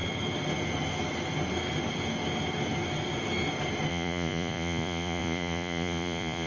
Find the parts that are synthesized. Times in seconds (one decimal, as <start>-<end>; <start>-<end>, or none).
3.9-6.5